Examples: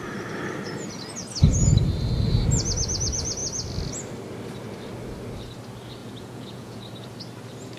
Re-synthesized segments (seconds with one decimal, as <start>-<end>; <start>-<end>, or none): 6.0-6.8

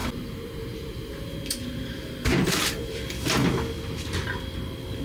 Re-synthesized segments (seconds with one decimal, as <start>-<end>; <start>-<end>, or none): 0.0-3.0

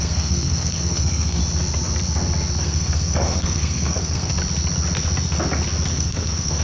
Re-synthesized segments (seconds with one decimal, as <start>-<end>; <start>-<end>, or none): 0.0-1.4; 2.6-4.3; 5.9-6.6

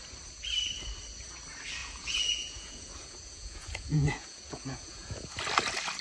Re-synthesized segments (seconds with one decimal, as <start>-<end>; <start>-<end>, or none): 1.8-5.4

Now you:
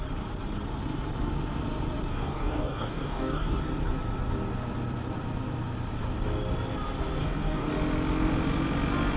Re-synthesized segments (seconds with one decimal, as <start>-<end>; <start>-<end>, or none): 2.1-3.6; 7.2-7.7